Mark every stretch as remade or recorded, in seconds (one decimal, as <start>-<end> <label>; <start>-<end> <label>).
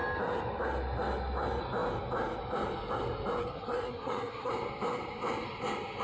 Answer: 0.0-3.4 recorded; 3.4-4.5 remade; 4.5-6.0 recorded